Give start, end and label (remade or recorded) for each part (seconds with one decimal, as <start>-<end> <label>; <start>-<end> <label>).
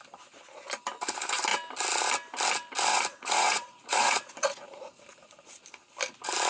0.0-2.9 recorded; 2.9-5.5 remade; 5.5-6.5 recorded